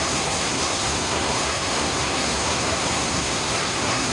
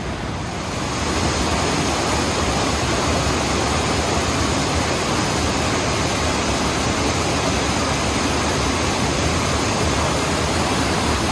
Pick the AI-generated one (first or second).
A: first